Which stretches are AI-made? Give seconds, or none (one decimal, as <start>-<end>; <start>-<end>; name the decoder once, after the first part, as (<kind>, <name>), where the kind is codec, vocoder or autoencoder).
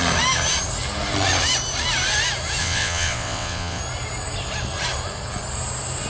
2.6-3.8 (vocoder, WaveNeXt)